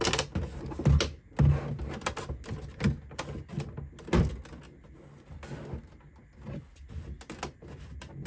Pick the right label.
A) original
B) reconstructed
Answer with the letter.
A